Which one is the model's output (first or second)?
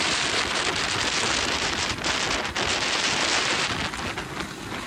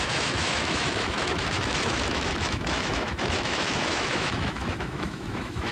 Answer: second